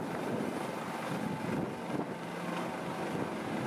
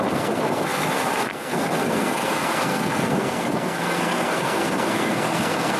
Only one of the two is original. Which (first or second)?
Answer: first